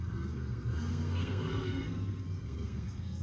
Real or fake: fake